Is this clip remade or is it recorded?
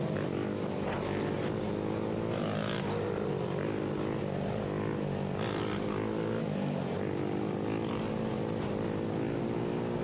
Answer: recorded